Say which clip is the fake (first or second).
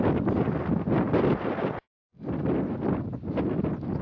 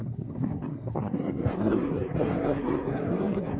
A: second